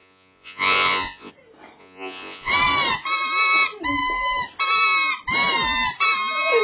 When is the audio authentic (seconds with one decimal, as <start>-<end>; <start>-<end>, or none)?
1.3-1.8; 2.5-6.6